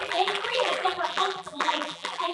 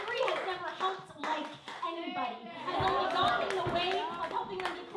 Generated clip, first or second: first